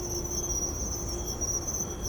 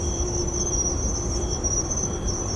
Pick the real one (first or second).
first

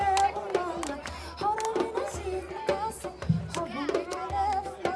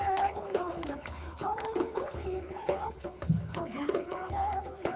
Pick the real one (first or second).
first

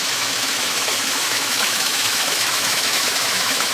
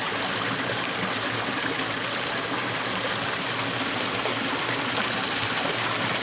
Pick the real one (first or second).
second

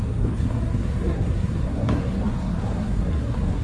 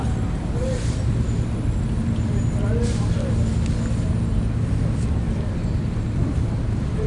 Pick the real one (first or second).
second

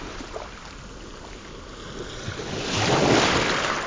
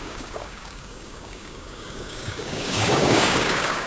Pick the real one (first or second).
first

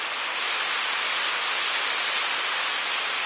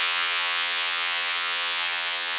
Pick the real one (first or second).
first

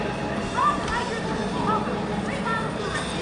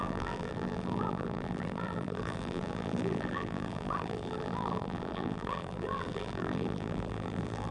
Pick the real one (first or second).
first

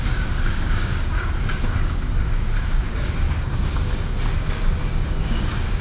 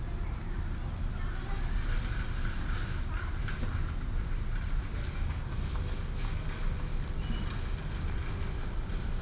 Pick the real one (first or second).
second